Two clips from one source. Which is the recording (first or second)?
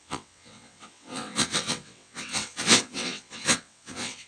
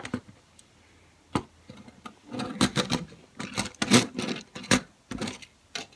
second